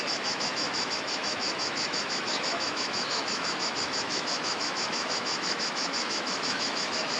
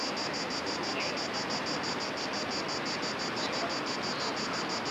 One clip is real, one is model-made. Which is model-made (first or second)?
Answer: first